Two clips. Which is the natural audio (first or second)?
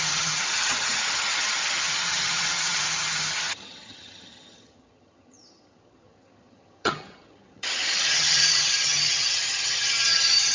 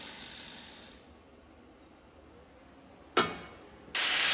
second